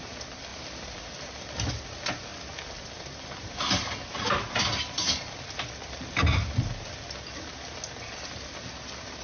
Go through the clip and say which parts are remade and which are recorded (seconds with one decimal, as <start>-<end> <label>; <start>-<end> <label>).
0.0-9.2 recorded